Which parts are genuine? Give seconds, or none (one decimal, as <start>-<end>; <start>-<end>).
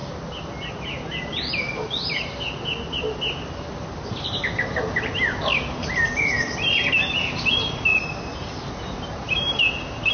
0.0-7.9; 9.4-10.1